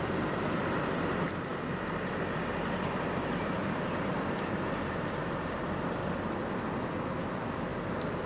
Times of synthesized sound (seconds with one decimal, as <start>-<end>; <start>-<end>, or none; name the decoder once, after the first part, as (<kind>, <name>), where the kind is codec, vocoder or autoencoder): 0.0-1.5 (vocoder, BigVGAN v2); 3.2-6.0; 7.2-8.3